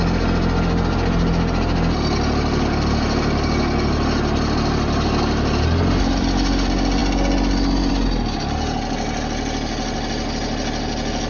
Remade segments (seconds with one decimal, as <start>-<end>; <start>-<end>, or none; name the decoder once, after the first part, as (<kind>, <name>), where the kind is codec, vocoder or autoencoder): none